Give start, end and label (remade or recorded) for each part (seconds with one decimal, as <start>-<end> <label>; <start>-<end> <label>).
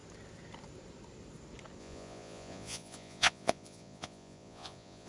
0.0-1.8 recorded; 1.8-5.1 remade